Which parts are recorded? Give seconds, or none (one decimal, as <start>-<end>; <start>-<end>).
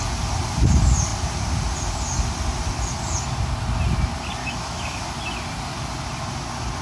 0.0-4.4; 5.0-6.8